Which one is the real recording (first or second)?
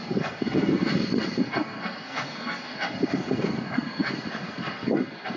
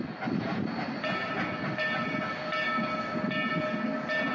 second